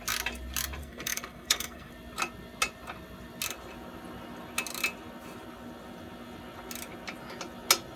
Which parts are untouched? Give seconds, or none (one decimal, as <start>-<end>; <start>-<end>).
0.0-0.8; 1.9-8.0